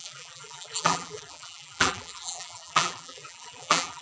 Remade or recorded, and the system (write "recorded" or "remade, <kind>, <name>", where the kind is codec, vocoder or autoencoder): remade, vocoder, BigVGAN v2